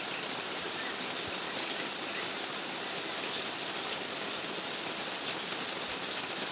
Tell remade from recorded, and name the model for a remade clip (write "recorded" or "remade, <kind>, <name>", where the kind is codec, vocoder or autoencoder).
recorded